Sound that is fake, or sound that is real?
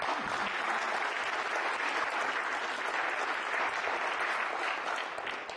real